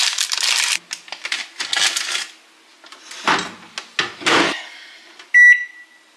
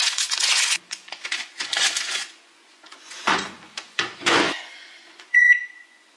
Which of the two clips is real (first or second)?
first